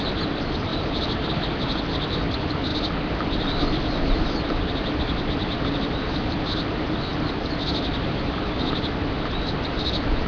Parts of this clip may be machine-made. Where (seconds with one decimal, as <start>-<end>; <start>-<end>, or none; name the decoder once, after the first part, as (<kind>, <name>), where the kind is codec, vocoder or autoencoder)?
none